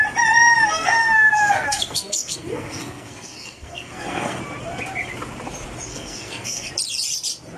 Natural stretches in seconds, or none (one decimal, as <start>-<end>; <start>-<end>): 0.0-0.5; 4.4-5.9; 6.7-7.6